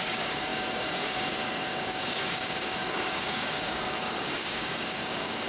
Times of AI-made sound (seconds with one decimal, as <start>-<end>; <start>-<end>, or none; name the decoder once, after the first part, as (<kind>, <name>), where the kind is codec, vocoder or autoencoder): 0.0-5.5 (codec, DAC)